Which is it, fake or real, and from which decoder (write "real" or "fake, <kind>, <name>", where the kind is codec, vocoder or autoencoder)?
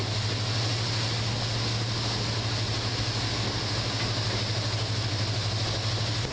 real